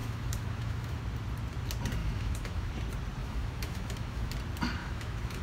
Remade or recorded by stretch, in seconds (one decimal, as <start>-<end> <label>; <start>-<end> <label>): 0.0-1.0 remade; 1.0-2.0 recorded; 2.0-2.7 remade; 2.7-3.2 recorded; 3.2-4.3 remade; 4.3-4.8 recorded; 4.8-5.4 remade